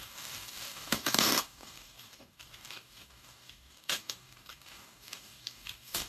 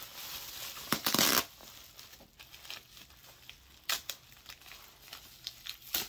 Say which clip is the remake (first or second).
first